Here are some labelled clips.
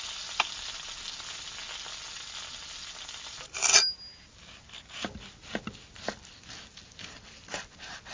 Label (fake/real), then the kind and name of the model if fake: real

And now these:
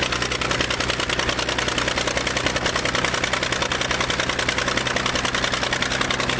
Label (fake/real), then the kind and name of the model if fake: real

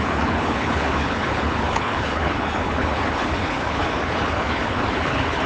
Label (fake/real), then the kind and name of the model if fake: fake, codec, HILCodec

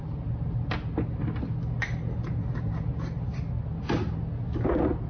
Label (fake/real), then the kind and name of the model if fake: real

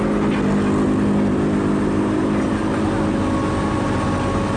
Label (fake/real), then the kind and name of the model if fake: real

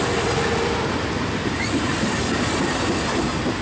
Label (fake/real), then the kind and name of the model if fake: real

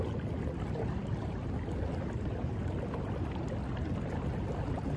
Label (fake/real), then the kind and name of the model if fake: real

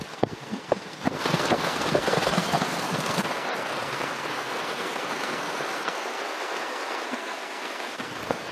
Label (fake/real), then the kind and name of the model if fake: fake, codec, SNAC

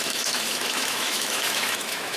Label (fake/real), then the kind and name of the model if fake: fake, autoencoder, DAC-VAE